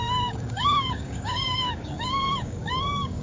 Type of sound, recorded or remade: remade